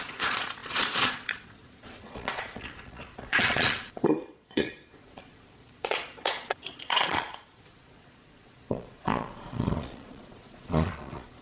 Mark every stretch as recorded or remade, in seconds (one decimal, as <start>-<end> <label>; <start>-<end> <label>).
0.0-11.4 remade